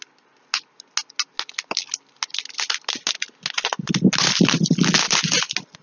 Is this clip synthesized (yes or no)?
no